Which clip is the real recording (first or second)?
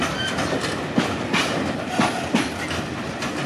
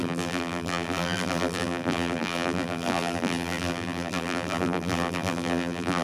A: first